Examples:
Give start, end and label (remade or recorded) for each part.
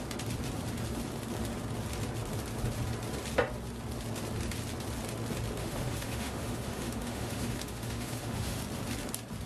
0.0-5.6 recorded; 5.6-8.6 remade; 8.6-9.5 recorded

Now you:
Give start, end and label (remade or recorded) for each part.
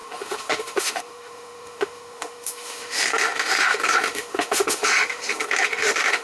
0.0-6.2 remade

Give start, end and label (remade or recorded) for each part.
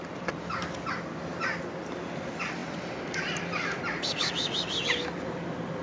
0.0-5.8 recorded